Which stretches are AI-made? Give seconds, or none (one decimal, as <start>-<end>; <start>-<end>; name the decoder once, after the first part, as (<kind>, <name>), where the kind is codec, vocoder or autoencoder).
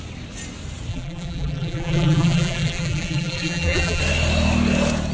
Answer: 0.9-4.0 (vocoder, BigVGAN v2)